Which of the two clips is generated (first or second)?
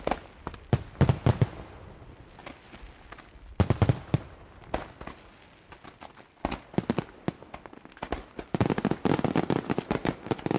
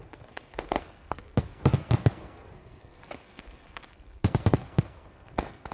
second